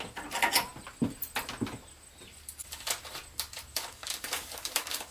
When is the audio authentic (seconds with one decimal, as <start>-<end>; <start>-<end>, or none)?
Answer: 0.0-3.7